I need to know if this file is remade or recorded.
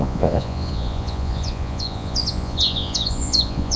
remade